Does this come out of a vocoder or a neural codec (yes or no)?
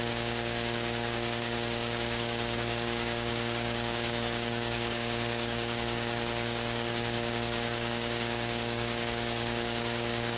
yes